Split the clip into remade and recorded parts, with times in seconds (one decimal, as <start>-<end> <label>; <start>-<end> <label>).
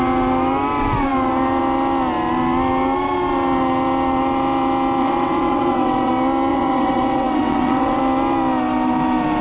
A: 0.0-5.0 recorded; 5.0-6.1 remade; 6.1-6.5 recorded; 6.5-8.0 remade; 8.0-9.4 recorded